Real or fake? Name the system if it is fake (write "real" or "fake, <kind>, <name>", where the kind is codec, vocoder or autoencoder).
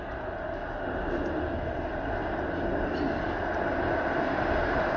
real